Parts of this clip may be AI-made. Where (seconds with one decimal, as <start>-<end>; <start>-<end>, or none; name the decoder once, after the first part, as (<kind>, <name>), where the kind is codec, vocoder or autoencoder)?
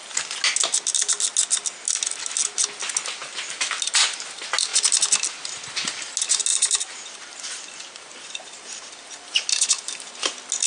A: 6.5-9.9 (vocoder, BigVGAN v2)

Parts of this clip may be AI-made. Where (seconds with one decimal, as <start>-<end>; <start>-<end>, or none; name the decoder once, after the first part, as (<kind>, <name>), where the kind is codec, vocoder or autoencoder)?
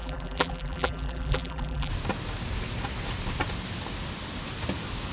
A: 0.0-1.9 (vocoder, BigVGAN v2)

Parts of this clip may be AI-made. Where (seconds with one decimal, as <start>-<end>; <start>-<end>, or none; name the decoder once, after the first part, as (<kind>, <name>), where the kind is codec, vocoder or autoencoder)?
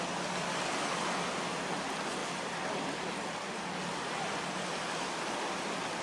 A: none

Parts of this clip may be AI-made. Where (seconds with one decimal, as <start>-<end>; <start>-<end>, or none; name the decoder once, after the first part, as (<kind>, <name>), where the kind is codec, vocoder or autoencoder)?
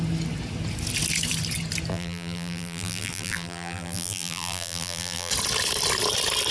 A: 1.9-5.3 (vocoder, BigVGAN v2)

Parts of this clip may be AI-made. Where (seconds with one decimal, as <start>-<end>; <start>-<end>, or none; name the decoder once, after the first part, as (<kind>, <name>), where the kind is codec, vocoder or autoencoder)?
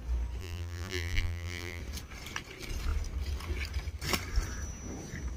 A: 0.4-1.8 (vocoder, BigVGAN v2)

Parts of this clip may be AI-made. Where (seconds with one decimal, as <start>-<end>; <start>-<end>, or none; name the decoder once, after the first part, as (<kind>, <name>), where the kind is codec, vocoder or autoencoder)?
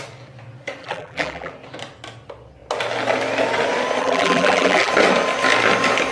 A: 0.8-1.5 (vocoder, BigVGAN v2); 4.0-4.9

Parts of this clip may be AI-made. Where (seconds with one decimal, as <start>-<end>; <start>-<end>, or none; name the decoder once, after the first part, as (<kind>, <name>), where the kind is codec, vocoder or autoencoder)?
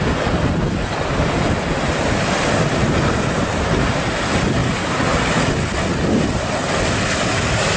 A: 4.6-5.5 (vocoder, BigVGAN v2)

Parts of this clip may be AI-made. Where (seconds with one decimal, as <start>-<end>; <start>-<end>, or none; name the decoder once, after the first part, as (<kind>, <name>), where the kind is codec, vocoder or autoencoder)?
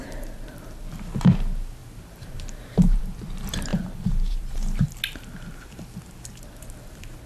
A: 0.0-0.8 (vocoder, BigVGAN v2); 1.8-3.0; 3.7-5.0